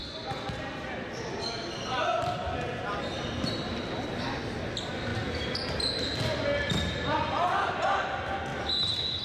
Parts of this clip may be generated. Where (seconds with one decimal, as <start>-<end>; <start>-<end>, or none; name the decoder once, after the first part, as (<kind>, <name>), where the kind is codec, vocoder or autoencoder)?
8.5-9.2 (vocoder, BigVGAN v2)